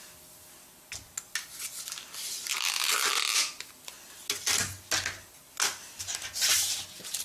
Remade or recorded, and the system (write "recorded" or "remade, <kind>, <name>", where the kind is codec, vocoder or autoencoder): recorded